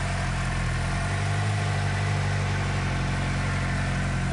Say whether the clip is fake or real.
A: real